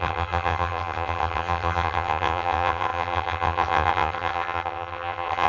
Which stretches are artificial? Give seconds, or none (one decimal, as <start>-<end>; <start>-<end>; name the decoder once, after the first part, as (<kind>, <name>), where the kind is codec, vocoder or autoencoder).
0.0-5.5 (vocoder, HiFi-GAN)